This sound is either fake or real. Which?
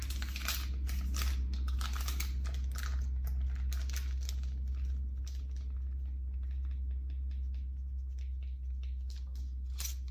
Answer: real